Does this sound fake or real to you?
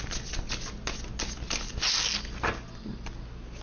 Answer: real